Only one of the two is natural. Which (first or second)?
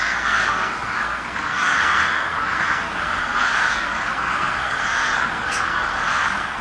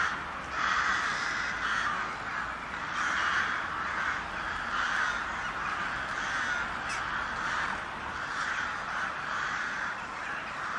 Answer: second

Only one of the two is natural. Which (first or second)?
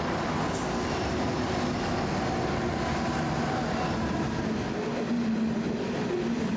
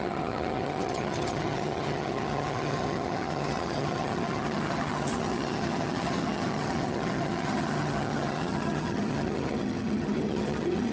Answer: first